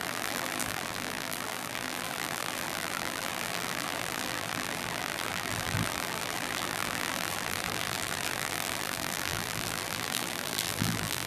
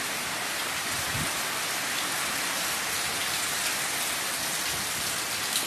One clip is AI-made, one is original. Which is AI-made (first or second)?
first